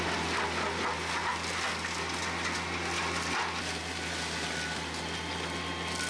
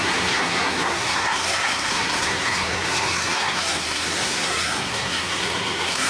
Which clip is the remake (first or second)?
second